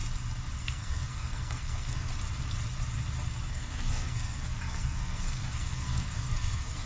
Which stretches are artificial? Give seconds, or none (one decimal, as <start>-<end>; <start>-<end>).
0.6-2.1; 3.5-6.9